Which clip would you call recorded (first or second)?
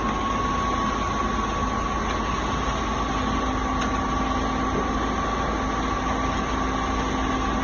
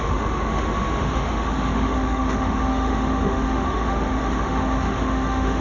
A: first